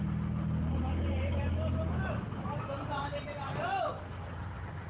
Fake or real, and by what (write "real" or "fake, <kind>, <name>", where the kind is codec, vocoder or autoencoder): real